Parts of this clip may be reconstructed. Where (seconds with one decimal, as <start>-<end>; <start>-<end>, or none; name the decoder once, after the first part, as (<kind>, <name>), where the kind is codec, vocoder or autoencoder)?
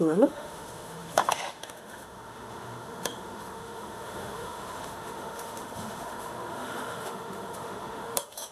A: 0.0-8.5 (autoencoder, DAC-VAE)